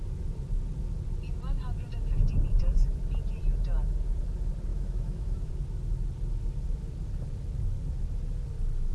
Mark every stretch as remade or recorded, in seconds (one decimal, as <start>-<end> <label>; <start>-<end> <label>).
0.0-4.7 recorded; 4.7-5.5 remade; 5.5-8.9 recorded